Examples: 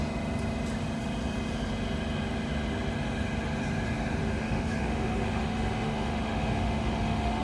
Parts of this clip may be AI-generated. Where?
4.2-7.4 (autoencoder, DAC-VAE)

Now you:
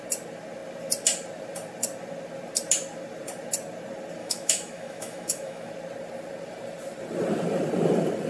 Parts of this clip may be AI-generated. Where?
4.2-5.7 (autoencoder, DAC-VAE)

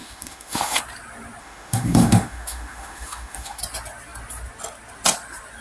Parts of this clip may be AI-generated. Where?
0.0-0.8 (autoencoder, DAC-VAE); 1.4-3.6

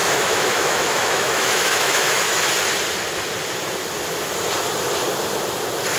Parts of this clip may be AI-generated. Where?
0.0-2.5 (autoencoder, DAC-VAE)

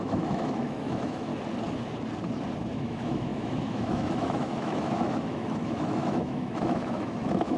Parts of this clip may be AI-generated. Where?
0.0-1.3 (autoencoder, DAC-VAE); 2.7-7.6

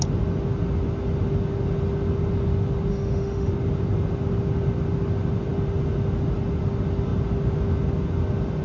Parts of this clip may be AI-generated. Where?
2.9-3.5 (autoencoder, DAC-VAE)

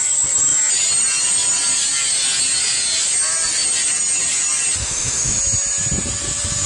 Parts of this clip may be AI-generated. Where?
4.8-5.4 (autoencoder, DAC-VAE)